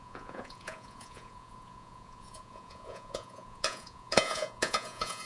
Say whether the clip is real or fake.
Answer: fake